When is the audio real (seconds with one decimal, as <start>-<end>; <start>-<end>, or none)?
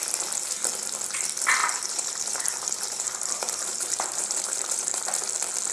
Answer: 0.0-1.6; 5.0-5.7